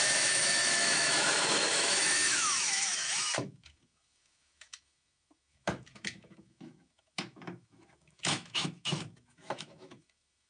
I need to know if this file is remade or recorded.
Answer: remade